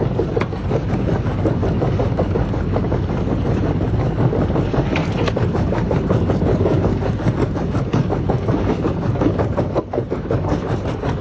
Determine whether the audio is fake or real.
fake